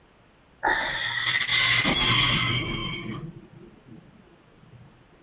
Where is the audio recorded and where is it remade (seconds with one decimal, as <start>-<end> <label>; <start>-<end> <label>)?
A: 0.0-1.5 recorded; 1.5-2.1 remade; 2.1-5.2 recorded